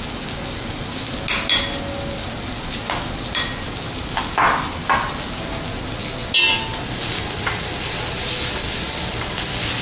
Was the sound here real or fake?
real